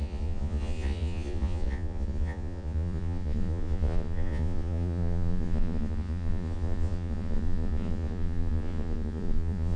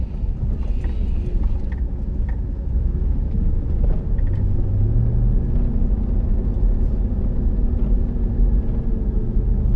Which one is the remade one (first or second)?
first